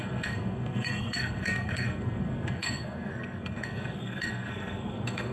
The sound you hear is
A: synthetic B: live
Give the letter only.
A